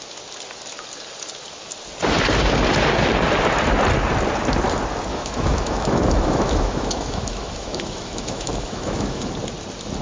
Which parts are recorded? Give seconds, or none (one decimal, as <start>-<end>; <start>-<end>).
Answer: 0.0-5.1; 9.3-10.0